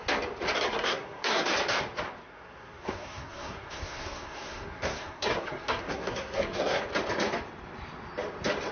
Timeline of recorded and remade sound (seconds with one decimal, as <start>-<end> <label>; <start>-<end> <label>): 0.0-0.7 recorded; 0.7-1.5 remade; 1.5-2.2 recorded; 2.2-6.8 remade; 6.8-8.7 recorded